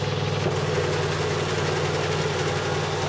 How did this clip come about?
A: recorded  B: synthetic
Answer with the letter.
A